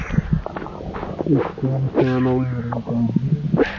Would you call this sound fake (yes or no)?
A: no